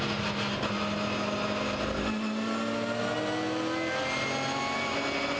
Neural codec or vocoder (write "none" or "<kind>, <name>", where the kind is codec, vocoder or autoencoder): none